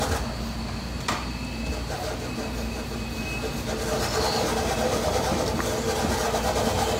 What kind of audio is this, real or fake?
real